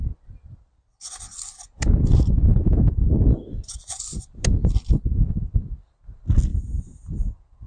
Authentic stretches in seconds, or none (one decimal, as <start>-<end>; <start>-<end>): 0.0-2.5; 3.0-6.5